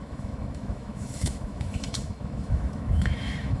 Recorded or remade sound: remade